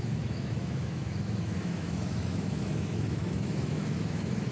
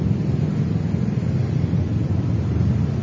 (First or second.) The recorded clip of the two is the second